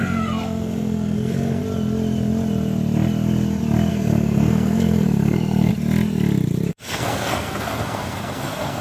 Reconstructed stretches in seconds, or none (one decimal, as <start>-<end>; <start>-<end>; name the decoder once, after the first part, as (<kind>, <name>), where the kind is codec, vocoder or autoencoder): 0.0-1.6 (codec, SNAC); 3.9-5.7; 6.7-8.8